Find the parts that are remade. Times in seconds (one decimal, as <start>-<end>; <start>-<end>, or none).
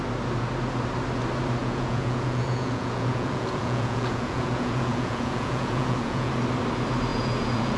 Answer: 1.6-6.3; 7.1-7.8